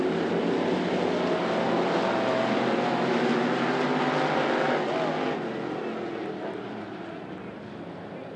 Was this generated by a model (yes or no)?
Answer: no